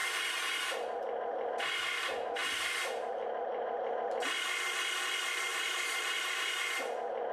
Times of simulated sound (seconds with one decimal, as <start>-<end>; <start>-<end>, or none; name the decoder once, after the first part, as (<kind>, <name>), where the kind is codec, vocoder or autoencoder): 2.4-3.9 (vocoder, BigVGAN v2); 5.5-6.6